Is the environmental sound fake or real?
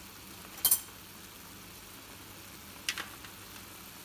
real